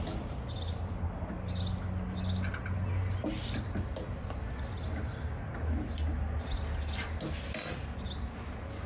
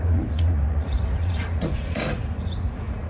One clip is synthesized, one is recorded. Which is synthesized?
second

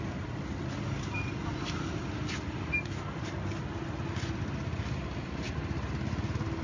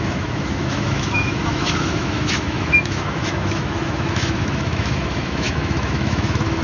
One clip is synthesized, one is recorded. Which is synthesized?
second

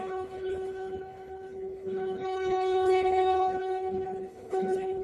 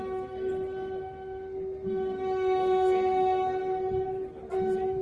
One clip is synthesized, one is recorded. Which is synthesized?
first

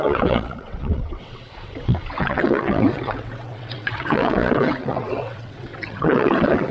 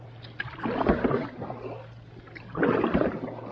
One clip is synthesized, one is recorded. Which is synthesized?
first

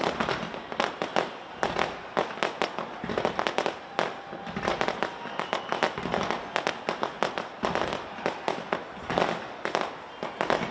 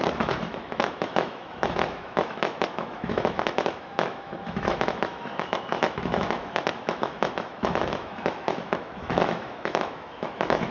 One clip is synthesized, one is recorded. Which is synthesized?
second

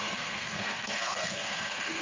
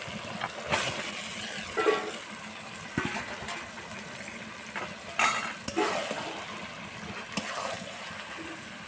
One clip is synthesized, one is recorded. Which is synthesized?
first